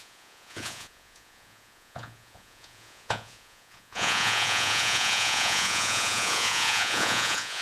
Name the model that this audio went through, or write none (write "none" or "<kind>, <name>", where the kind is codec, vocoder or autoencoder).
vocoder, Vocos